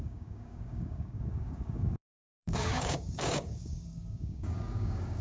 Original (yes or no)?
no